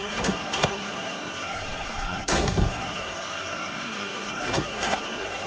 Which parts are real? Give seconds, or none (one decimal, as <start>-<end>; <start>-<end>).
none